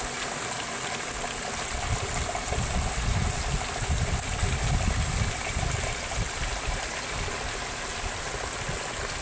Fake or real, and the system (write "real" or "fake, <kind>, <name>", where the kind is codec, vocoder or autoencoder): real